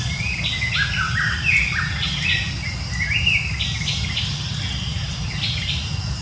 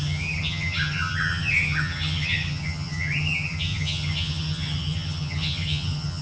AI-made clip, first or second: second